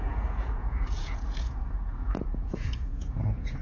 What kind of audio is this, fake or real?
fake